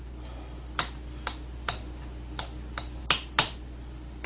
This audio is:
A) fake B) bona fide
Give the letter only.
B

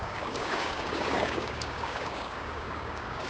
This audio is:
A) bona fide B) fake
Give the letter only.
B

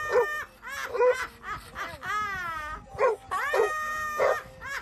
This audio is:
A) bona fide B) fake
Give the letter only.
A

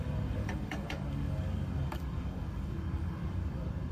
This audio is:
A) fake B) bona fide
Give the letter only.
A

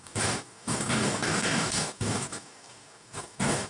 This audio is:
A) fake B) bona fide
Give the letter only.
A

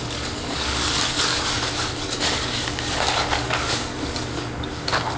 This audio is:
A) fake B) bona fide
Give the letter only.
A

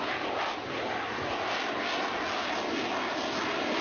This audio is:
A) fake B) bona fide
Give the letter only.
B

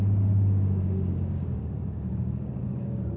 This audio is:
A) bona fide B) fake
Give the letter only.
B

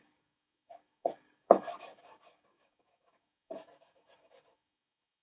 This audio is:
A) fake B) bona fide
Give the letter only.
A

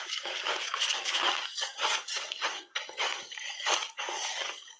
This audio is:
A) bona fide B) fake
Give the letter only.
B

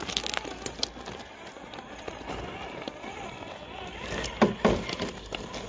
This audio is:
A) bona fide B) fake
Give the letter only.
A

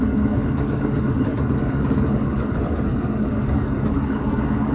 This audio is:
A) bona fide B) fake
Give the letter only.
B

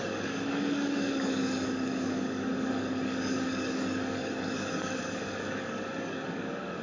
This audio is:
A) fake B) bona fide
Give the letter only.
A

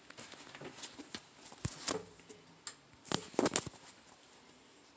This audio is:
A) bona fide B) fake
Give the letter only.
A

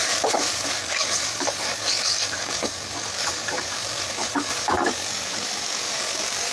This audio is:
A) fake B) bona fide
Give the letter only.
A